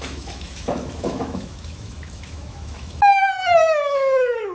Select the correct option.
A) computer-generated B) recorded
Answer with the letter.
A